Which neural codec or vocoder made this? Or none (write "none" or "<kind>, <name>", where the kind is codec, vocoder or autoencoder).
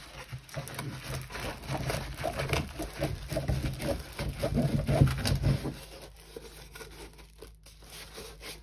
none